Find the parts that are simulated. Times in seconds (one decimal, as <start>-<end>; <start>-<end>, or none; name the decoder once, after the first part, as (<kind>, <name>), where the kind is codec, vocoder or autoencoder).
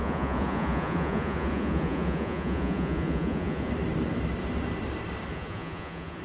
0.0-3.7 (vocoder, Vocos); 5.3-6.2